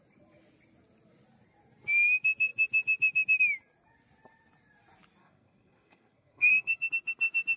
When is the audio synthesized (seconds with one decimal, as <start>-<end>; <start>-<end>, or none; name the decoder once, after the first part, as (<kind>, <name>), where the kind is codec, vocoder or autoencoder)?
5.2-6.9 (codec, SNAC)